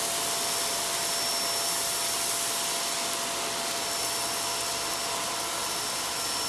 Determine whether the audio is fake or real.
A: real